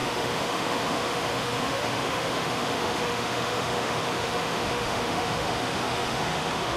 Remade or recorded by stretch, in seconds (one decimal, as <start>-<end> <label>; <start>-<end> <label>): 0.0-6.8 remade